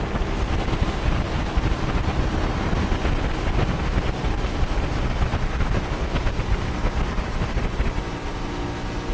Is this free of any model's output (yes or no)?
yes